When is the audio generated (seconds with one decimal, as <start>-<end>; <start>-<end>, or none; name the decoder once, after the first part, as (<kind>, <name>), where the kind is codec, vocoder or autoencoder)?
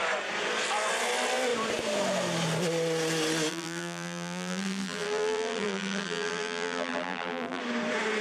3.5-7.6 (vocoder, BigVGAN v2)